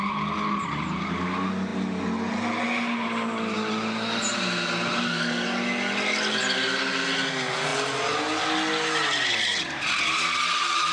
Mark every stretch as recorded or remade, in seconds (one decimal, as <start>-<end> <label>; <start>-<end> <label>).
0.0-10.9 recorded